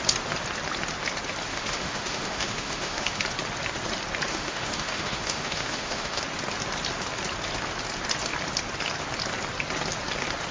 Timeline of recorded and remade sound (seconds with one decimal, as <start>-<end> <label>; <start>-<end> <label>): 0.0-1.5 recorded; 1.5-3.2 remade; 3.2-4.3 recorded; 4.3-6.2 remade; 6.2-10.5 recorded